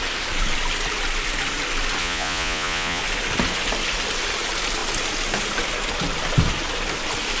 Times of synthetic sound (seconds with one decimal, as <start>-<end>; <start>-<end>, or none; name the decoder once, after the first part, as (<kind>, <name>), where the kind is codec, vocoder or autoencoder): 2.0-3.0 (vocoder, Vocos)